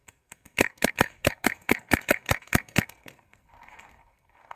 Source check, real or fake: fake